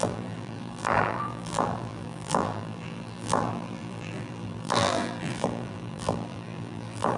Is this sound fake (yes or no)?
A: yes